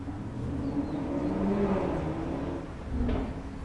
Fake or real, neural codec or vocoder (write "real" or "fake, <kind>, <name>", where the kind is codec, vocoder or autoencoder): real